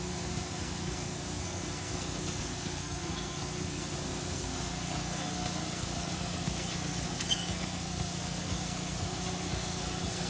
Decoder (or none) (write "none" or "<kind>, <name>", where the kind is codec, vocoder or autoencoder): codec, SNAC